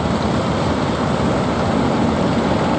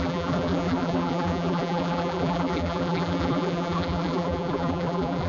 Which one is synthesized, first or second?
second